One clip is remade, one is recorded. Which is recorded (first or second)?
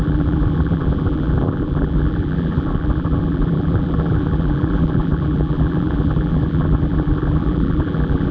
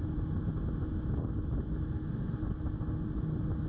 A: second